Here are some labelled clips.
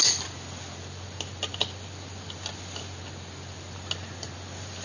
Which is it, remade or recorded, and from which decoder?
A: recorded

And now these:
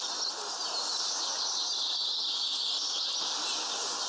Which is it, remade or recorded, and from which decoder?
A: recorded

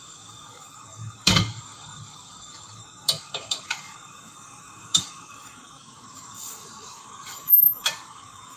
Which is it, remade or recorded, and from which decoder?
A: remade, codec, DAC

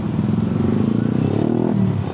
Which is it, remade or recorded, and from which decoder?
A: recorded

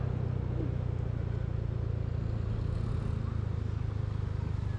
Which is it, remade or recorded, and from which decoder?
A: recorded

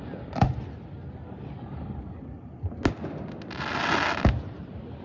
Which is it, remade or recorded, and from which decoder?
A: recorded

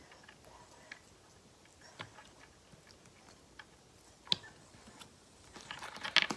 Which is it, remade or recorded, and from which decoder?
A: recorded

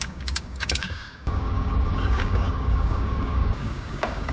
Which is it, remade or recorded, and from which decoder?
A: remade, codec, DAC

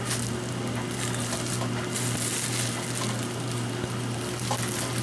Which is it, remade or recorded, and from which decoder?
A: recorded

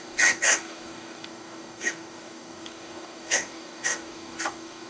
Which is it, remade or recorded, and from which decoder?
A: remade, codec, DAC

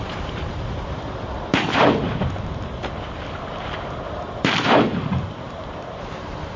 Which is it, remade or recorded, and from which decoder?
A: recorded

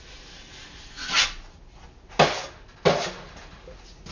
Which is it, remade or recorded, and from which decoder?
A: recorded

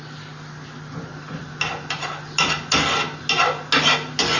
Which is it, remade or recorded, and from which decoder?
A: recorded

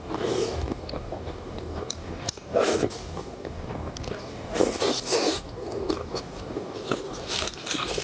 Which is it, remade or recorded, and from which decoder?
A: remade, codec, DAC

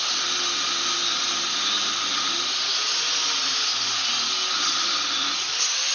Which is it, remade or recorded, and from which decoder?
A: recorded